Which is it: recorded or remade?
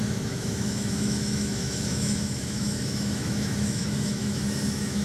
remade